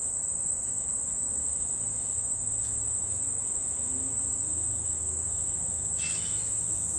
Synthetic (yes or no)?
yes